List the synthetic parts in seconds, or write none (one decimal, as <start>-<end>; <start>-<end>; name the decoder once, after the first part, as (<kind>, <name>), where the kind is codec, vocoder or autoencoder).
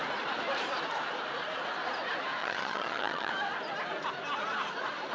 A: 2.4-3.3 (vocoder, HiFi-GAN)